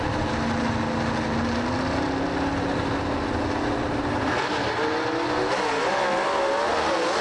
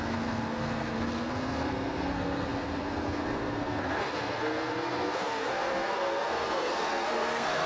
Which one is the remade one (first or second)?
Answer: second